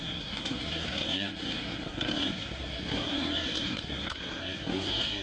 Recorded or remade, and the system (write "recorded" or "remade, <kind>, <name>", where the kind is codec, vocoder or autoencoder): remade, codec, SNAC